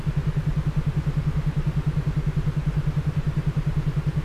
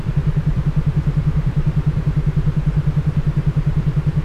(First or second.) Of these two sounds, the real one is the first